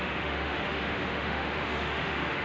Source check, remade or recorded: remade